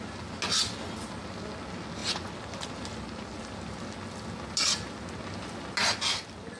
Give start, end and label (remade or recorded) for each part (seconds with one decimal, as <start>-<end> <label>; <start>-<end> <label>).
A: 0.0-6.6 recorded